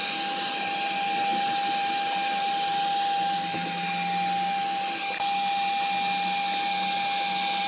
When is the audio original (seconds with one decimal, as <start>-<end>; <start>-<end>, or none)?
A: 0.0-7.7